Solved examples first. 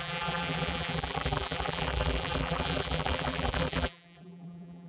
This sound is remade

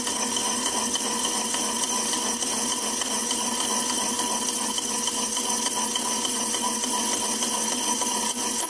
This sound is recorded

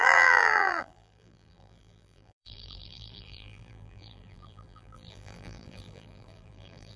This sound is remade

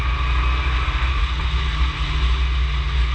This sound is recorded